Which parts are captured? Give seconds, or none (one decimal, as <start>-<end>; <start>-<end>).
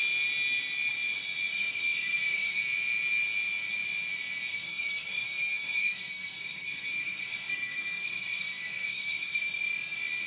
0.0-1.5; 2.6-4.5; 9.4-10.3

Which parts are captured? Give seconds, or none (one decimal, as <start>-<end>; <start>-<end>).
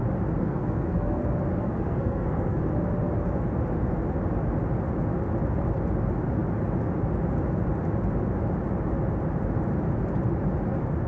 0.0-0.4; 1.2-1.6; 2.6-11.1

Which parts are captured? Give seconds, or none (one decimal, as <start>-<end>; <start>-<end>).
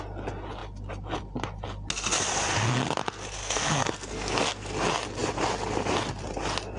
0.0-3.4; 4.7-6.8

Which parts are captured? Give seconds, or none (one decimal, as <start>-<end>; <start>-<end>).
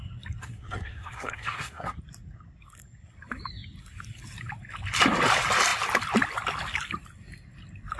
0.0-0.4; 2.0-8.0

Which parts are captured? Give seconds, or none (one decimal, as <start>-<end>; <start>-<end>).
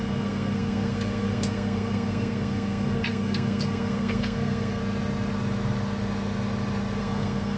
4.8-7.0